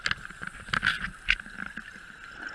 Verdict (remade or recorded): recorded